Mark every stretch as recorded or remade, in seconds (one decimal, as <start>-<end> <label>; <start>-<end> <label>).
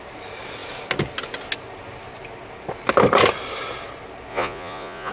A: 0.0-4.3 recorded; 4.3-5.1 remade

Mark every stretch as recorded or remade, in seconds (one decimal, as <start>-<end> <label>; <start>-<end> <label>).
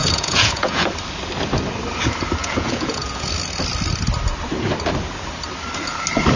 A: 0.0-0.9 remade; 0.9-2.4 recorded; 2.4-3.3 remade; 3.3-6.4 recorded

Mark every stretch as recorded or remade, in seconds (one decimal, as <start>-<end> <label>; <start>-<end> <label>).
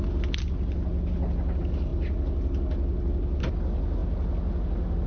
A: 0.0-5.1 recorded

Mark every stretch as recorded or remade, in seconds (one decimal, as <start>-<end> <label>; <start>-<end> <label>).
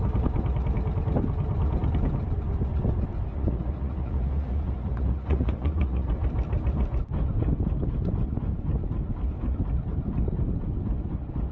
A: 0.0-3.3 recorded; 3.3-6.1 remade; 6.1-11.5 recorded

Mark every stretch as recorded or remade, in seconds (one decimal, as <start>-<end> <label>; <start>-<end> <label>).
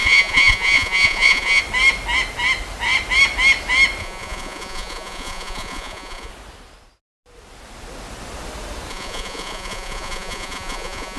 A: 0.0-1.6 remade; 1.6-4.0 recorded; 4.0-6.3 remade; 6.3-8.9 recorded; 8.9-11.2 remade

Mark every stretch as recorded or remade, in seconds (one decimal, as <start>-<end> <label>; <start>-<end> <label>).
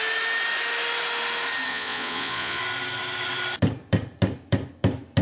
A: 0.0-1.7 recorded; 1.7-2.6 remade; 2.6-5.2 recorded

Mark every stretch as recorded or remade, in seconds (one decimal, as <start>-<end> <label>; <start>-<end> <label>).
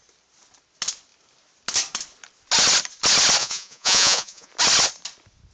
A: 0.0-3.4 recorded; 3.4-4.5 remade; 4.5-5.5 recorded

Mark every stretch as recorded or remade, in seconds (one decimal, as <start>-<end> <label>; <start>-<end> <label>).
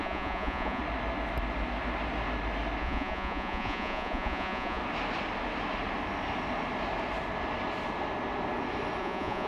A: 0.0-0.8 remade; 0.8-2.8 recorded; 2.8-4.8 remade; 4.8-9.0 recorded; 9.0-9.5 remade